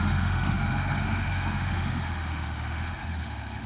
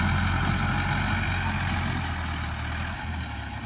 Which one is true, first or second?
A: second